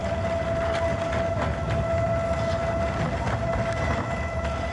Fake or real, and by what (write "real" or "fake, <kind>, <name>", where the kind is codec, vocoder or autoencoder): real